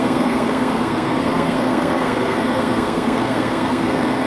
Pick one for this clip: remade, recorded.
remade